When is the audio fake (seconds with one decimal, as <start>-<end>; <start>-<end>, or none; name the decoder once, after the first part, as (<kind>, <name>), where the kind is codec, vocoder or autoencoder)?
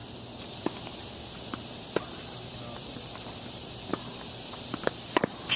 none